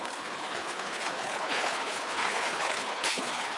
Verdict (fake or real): fake